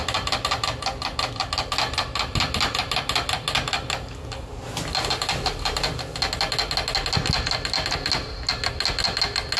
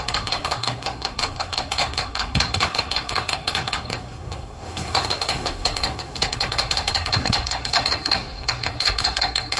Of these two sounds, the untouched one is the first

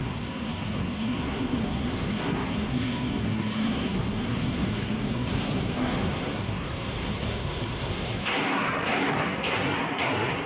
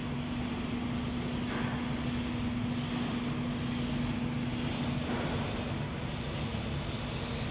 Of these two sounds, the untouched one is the second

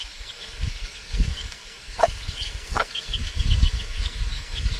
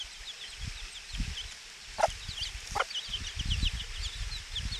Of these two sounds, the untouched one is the second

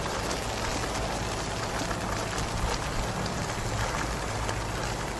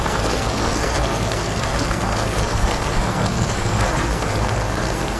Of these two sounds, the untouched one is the first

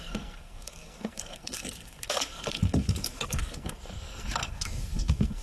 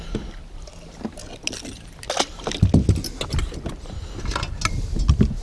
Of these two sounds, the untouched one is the second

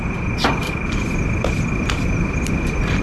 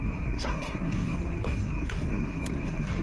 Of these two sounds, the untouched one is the first